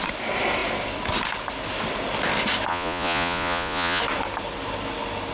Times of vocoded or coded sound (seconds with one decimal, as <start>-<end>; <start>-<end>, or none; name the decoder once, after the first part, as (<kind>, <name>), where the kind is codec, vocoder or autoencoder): 2.7-4.0 (vocoder, Vocos)